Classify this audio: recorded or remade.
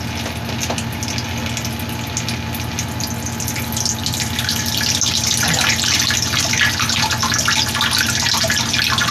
recorded